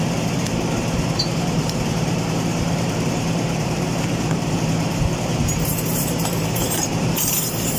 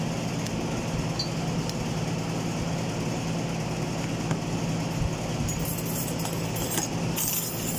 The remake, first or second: first